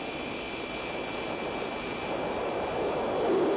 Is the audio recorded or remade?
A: recorded